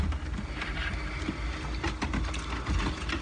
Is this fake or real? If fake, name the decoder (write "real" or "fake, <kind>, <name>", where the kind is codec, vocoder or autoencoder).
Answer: real